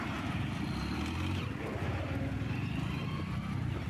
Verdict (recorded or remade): recorded